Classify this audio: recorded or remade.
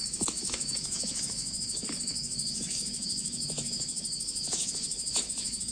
remade